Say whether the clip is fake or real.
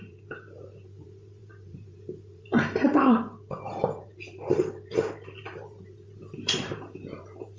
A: fake